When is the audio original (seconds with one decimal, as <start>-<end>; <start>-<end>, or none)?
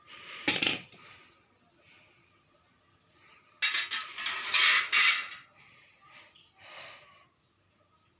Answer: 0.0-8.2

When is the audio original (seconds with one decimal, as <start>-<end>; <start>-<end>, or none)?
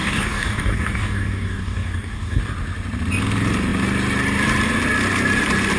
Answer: 2.4-5.8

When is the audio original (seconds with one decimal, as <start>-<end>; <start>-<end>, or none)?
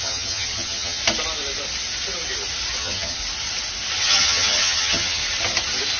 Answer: 1.0-2.8; 3.2-4.0; 5.2-6.0